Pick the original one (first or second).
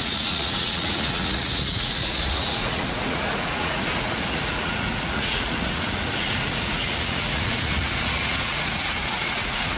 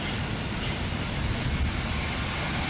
second